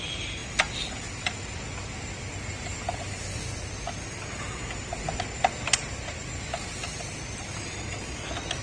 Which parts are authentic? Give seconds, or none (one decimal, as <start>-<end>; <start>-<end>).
0.0-8.6